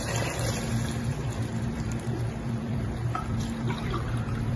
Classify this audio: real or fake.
fake